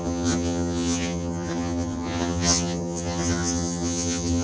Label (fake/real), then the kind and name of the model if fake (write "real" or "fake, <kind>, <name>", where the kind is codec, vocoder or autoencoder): fake, vocoder, HiFi-GAN